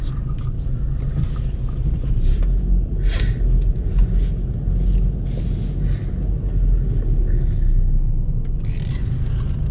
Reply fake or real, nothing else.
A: real